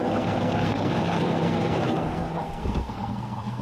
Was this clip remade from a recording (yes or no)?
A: yes